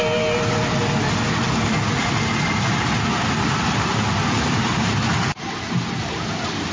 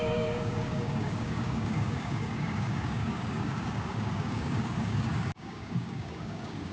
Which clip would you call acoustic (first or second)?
first